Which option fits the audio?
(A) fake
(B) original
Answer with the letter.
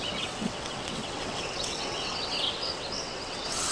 A